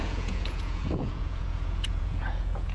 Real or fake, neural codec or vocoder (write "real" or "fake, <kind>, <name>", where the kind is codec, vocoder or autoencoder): fake, vocoder, Vocos